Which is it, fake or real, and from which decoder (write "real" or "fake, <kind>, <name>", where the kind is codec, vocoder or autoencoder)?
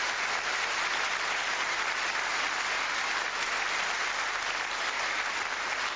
real